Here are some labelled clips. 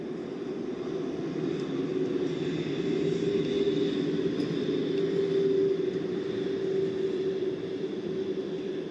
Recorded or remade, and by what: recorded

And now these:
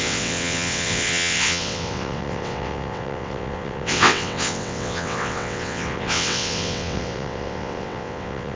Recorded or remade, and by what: remade, vocoder, WaveNeXt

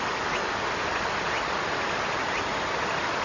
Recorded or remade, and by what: recorded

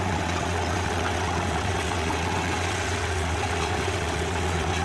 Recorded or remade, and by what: remade, vocoder, WaveNeXt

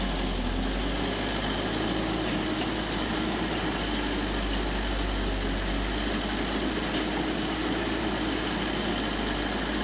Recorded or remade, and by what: recorded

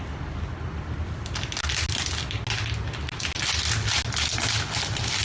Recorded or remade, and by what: recorded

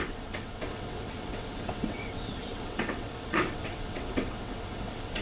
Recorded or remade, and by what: remade, vocoder, WaveNeXt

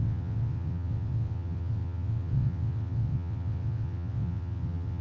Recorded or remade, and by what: remade, vocoder, WaveNeXt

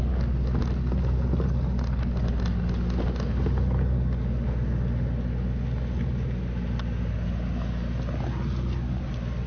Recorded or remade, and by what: recorded